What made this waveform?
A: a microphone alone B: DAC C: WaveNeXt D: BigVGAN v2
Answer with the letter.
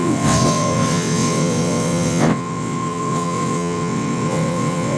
C